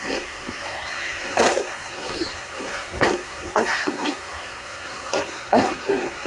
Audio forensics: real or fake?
fake